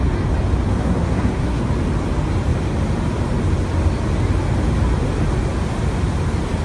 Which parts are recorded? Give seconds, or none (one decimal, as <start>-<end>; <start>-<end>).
0.0-0.7; 1.6-6.6